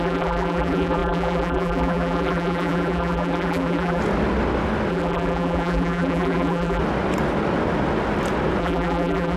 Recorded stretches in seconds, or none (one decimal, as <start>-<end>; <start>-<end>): 4.0-4.9; 6.8-8.6

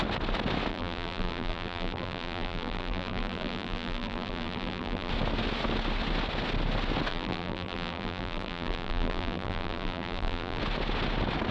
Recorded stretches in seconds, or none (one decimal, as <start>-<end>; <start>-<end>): 0.0-0.7; 5.1-7.1; 10.6-11.5

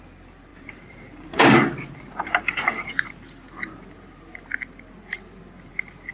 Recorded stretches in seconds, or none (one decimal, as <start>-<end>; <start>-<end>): 0.0-0.5; 2.9-6.1

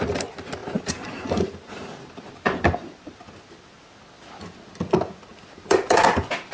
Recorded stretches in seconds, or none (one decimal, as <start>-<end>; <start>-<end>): 0.0-0.6; 3.2-5.3

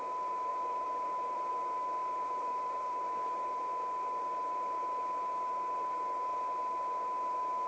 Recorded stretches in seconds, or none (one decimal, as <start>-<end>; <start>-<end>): 0.0-0.5; 1.5-2.0; 3.6-7.7

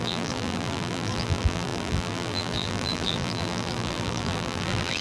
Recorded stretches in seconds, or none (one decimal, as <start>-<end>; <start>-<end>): none

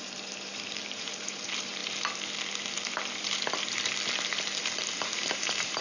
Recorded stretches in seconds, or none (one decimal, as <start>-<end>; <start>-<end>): 1.8-4.9